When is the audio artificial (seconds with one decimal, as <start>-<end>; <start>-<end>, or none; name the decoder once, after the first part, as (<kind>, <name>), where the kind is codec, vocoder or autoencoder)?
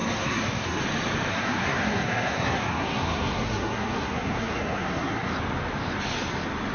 0.0-0.8 (codec, SNAC); 1.3-5.3